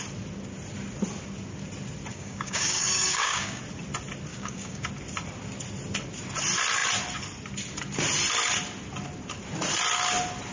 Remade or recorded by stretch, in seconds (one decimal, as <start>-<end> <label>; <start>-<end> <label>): 0.0-2.1 recorded; 2.1-3.6 remade; 3.6-4.3 recorded; 4.3-4.9 remade; 4.9-10.5 recorded